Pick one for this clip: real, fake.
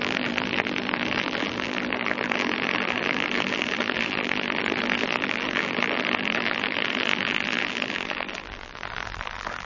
fake